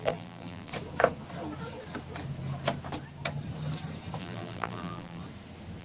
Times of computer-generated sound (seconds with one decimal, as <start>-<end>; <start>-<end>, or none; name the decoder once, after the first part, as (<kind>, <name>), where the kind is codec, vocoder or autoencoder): 0.0-0.7 (vocoder, BigVGAN v2); 4.2-5.2